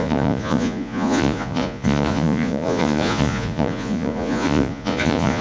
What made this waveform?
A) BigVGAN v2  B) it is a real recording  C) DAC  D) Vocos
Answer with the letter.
D